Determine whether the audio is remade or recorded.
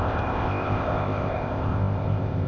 remade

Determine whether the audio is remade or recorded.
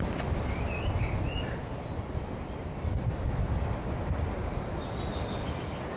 recorded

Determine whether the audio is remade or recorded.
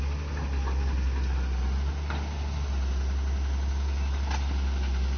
recorded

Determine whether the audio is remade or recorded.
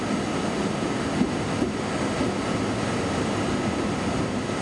recorded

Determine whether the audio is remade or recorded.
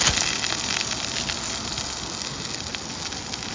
recorded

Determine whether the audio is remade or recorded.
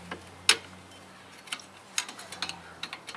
recorded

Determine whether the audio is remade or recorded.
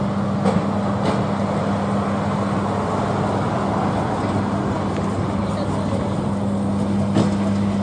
recorded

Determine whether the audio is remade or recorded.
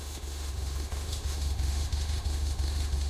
remade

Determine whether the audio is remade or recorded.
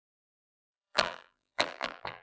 remade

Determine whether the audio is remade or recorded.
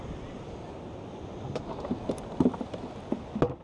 recorded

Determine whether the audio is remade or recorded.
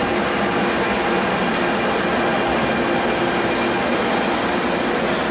recorded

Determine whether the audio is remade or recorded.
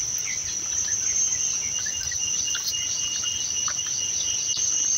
recorded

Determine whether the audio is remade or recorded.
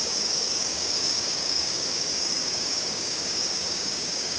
remade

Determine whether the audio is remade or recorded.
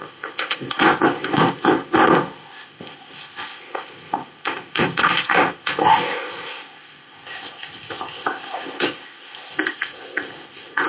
remade